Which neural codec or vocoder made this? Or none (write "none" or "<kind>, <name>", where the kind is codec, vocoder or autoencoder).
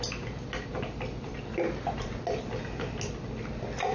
none